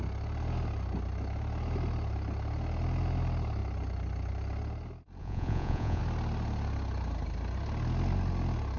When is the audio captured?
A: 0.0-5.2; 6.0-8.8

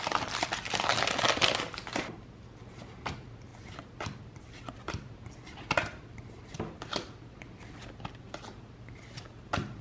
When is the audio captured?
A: 3.5-4.3

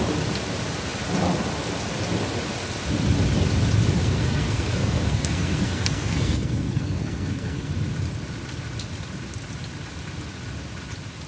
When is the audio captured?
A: 0.0-4.0; 7.7-11.3

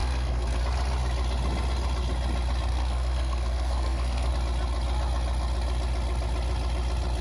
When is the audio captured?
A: 0.6-2.7; 4.3-7.2

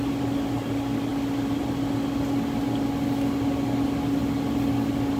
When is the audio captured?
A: 0.0-5.2